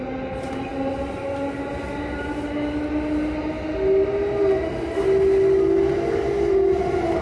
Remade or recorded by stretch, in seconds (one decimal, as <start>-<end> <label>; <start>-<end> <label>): 0.0-7.2 recorded